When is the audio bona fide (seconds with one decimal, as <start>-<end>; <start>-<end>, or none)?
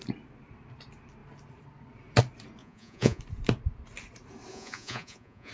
0.0-2.6; 3.2-4.5